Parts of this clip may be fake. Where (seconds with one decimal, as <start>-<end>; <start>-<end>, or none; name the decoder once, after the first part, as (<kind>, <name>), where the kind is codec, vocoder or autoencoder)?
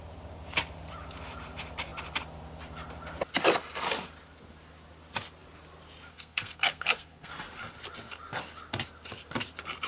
6.1-7.3 (codec, SNAC)